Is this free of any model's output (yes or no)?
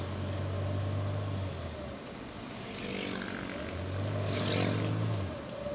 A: yes